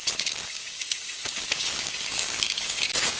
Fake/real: fake